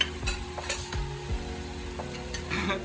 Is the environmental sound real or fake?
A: real